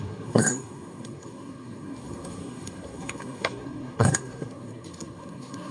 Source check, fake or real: fake